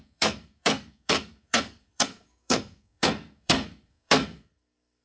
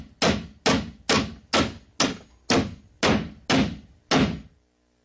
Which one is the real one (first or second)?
second